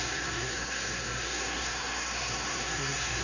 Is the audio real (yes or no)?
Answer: no